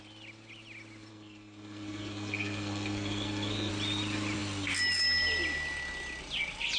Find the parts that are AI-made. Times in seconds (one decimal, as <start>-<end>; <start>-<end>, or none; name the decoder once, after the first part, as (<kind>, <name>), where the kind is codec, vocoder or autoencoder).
1.1-3.7 (codec, SNAC)